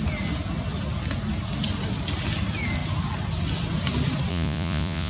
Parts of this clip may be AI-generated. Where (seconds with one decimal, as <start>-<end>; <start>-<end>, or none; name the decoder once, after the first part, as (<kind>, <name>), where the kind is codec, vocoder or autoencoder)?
4.3-5.1 (vocoder, Vocos)